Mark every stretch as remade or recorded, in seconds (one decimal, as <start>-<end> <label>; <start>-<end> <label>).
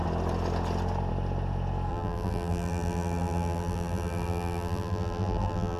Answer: 0.0-1.9 recorded; 1.9-5.8 remade